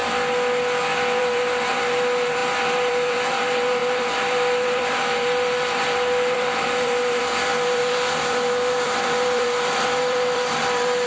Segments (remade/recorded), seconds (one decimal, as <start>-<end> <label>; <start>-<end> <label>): 0.0-1.2 recorded; 1.2-11.1 remade